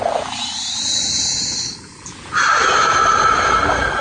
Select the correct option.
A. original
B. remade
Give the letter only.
A